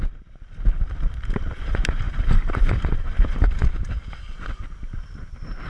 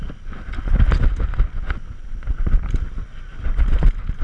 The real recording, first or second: second